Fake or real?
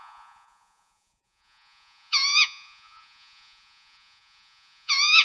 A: fake